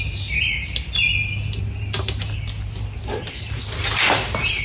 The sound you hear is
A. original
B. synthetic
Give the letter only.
A